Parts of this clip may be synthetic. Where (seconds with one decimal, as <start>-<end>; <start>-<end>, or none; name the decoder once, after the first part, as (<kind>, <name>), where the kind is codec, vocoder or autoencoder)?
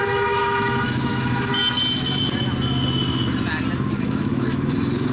0.0-1.6 (autoencoder, DAC-VAE); 4.0-5.1